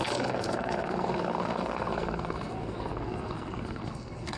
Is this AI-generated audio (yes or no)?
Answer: yes